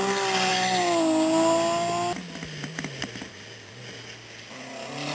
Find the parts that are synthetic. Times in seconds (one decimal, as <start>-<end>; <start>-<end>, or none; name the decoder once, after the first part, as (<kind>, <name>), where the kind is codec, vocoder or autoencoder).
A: none